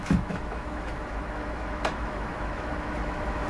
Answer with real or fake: fake